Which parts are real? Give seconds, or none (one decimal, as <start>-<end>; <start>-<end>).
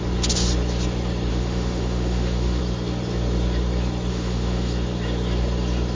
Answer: 0.0-1.3; 2.6-4.1; 4.7-5.9